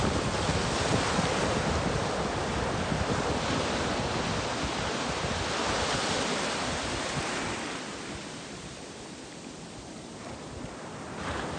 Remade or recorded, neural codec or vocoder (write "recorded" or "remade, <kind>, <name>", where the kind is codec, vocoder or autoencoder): recorded